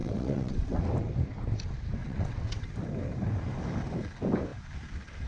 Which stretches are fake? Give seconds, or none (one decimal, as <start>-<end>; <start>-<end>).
0.0-0.8; 2.0-2.7